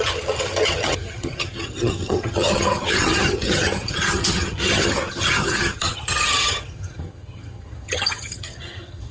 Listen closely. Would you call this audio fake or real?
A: fake